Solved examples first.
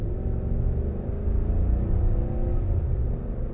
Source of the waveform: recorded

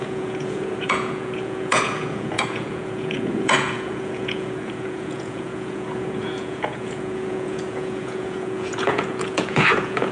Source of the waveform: remade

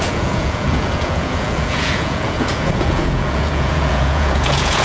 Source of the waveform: remade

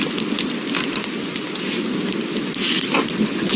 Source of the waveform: recorded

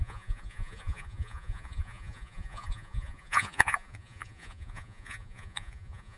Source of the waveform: remade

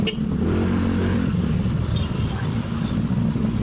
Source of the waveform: recorded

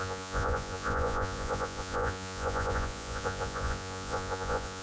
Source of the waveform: remade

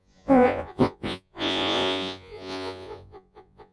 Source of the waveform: remade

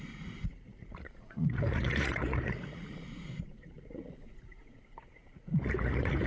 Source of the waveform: remade